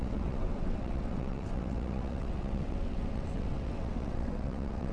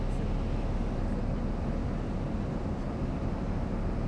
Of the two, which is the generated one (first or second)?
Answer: first